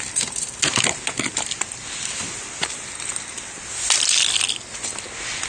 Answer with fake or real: real